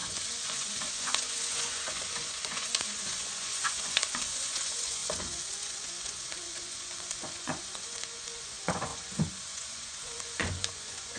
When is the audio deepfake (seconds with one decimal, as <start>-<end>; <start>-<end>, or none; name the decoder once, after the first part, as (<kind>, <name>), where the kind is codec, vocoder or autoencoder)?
0.0-11.2 (vocoder, Vocos)